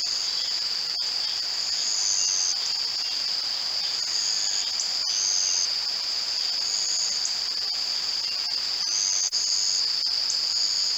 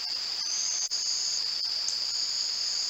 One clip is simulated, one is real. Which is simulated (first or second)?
second